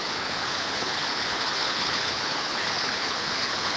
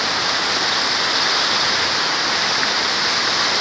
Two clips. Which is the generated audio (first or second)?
first